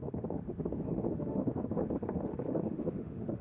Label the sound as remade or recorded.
remade